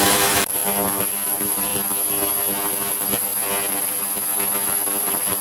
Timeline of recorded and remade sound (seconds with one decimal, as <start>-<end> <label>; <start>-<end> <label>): 0.0-1.7 remade; 1.7-2.9 recorded; 2.9-3.3 remade; 3.3-5.0 recorded; 5.0-5.4 remade